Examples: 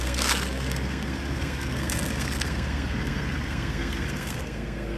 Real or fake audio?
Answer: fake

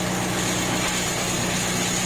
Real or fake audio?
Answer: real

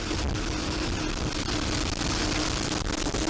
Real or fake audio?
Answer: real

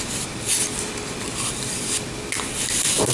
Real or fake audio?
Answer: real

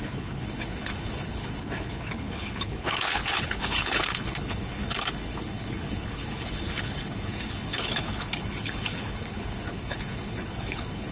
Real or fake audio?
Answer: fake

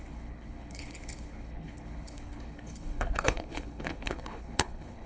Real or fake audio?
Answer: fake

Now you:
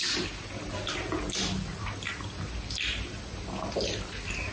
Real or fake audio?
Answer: real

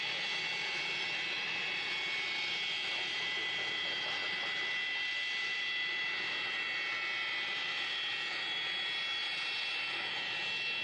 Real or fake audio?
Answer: real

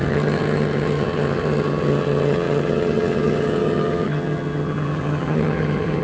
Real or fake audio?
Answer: fake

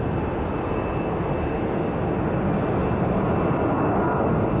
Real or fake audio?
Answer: real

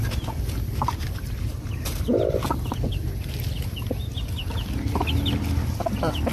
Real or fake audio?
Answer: real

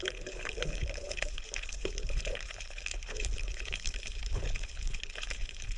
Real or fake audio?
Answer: fake